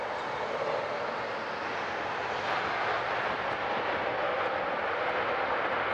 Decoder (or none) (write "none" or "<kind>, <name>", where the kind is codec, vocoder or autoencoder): none